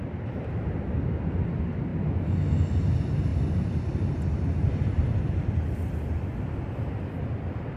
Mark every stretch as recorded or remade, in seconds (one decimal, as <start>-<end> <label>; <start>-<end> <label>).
0.0-3.3 recorded; 3.3-5.2 remade; 5.2-6.3 recorded; 6.3-7.1 remade; 7.1-7.8 recorded